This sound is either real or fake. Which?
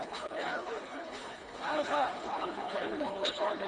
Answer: fake